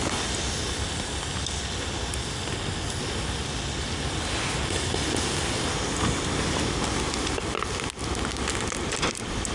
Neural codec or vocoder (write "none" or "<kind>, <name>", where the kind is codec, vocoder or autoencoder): none